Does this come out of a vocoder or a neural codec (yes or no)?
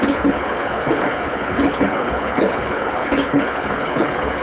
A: yes